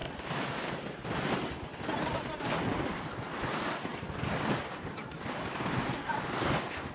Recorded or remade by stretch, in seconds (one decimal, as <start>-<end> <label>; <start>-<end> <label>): 0.0-6.9 remade